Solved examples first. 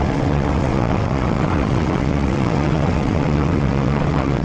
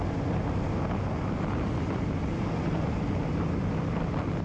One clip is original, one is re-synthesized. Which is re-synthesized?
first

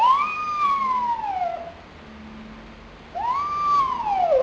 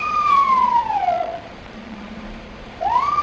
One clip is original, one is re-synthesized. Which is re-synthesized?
second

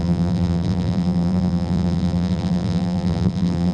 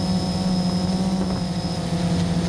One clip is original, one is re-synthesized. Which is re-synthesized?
first